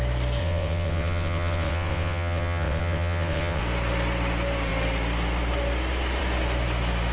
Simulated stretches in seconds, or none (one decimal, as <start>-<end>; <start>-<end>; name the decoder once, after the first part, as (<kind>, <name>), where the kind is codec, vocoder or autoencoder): 0.4-3.6 (vocoder, WaveNeXt)